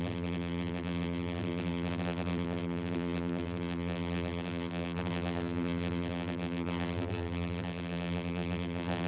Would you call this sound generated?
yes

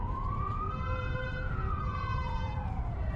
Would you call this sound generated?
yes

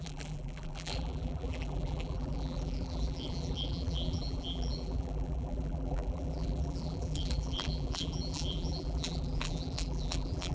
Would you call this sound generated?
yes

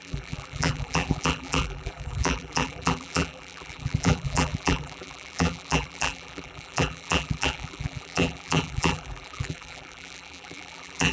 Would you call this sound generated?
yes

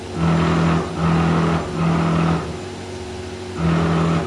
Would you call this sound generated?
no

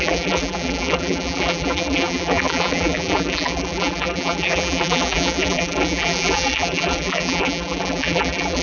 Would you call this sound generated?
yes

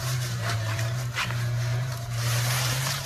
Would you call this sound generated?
yes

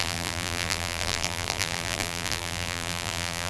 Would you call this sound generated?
yes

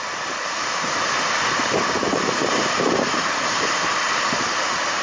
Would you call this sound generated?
yes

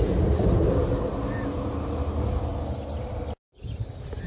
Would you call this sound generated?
no